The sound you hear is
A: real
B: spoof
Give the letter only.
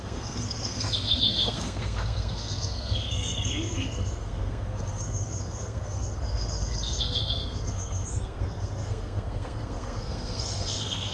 B